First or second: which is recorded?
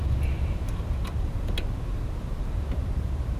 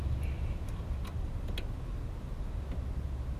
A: second